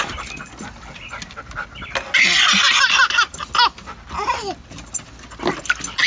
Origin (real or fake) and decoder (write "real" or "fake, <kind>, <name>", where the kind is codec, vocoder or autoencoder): real